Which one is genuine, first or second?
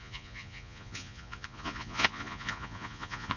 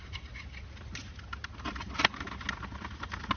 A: second